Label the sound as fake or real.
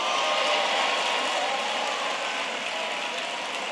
real